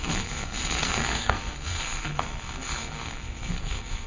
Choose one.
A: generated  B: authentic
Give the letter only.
A